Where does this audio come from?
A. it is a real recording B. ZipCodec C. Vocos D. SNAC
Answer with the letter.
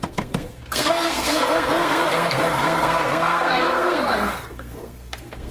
D